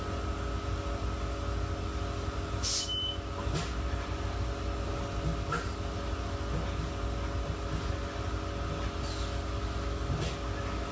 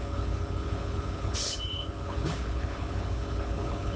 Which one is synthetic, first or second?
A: second